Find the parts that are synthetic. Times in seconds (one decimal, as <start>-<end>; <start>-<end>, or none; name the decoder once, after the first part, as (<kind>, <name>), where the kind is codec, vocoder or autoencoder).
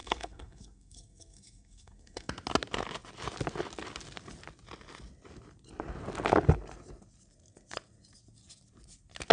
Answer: 0.0-2.3 (codec, SNAC)